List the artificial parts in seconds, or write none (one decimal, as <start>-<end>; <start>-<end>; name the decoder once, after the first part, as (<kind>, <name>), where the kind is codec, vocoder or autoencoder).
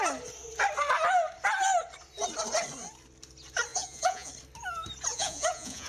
3.7-4.3 (vocoder, Vocos); 5.1-5.9